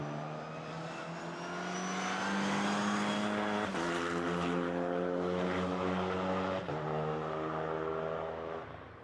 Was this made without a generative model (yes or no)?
yes